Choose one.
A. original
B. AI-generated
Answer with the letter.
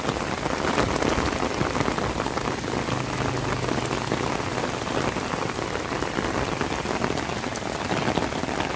A